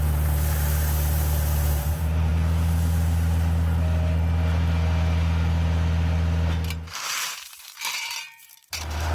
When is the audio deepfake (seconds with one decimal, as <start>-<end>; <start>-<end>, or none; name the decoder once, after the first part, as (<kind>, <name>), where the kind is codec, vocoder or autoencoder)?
0.0-2.3 (vocoder, BigVGAN v2); 6.9-9.1